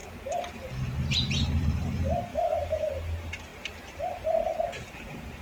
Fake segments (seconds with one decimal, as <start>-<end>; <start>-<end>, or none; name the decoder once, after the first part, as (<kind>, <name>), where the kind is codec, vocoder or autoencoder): 2.3-2.9 (autoencoder, DAC-VAE)